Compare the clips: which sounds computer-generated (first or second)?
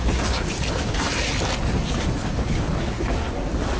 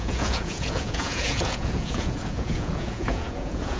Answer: second